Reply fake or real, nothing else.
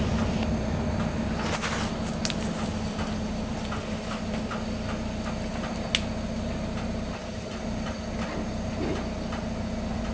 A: real